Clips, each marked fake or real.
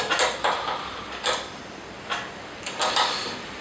real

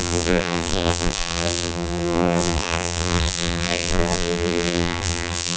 fake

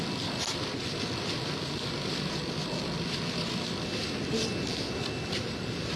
real